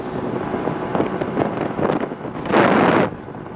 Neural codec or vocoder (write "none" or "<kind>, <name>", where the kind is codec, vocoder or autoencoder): none